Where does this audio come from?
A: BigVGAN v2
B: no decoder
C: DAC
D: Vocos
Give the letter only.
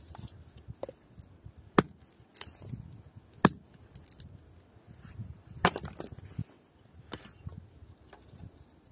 B